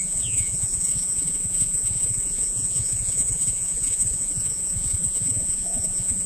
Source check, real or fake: fake